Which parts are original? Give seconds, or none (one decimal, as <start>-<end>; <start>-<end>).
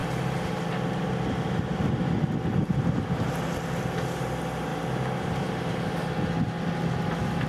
0.0-7.5